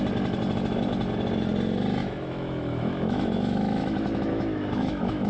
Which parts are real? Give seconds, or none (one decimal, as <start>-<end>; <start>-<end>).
0.0-2.0